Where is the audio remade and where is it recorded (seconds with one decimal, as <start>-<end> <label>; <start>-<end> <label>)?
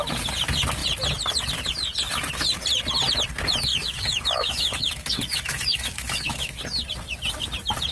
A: 0.0-3.7 recorded; 3.7-6.6 remade; 6.6-7.9 recorded